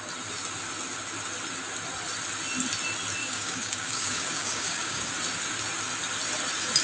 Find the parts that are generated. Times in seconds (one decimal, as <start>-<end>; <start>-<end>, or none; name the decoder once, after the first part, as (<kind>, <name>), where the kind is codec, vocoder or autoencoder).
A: 3.2-5.1 (codec, DAC)